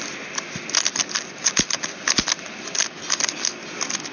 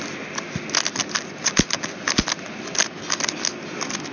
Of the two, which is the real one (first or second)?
second